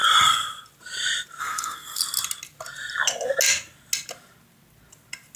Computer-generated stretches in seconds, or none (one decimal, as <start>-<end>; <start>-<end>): 1.4-2.0